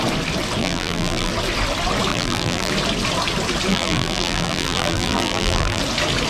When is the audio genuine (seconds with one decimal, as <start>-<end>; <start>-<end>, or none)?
0.0-0.6; 1.3-2.1; 2.7-3.7; 5.8-6.3